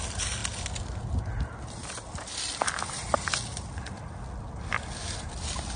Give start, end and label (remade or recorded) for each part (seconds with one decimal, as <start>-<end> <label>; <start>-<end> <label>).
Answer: 0.0-5.8 recorded